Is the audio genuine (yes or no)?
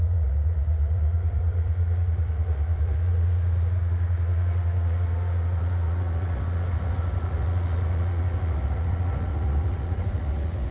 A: no